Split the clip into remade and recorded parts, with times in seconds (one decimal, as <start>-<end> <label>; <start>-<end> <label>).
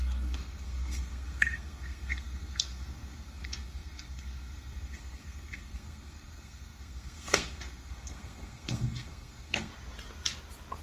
0.0-9.7 remade; 9.7-10.8 recorded